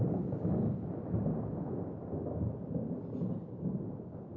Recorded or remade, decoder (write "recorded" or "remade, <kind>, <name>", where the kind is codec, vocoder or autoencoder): recorded